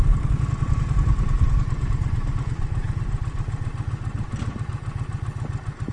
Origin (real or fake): real